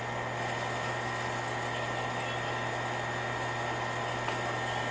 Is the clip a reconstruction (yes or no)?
no